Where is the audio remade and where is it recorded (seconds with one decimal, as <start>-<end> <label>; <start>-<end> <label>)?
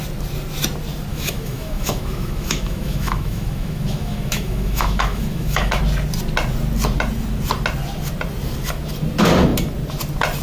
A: 0.0-1.1 recorded; 1.1-5.8 remade; 5.8-10.4 recorded